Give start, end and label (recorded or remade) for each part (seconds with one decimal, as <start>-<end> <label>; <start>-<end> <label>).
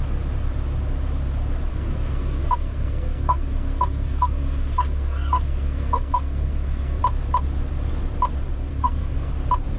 0.0-1.7 recorded; 1.7-7.0 remade; 7.0-8.7 recorded; 8.7-9.3 remade; 9.3-9.8 recorded